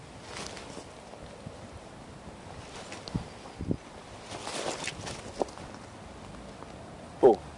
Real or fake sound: real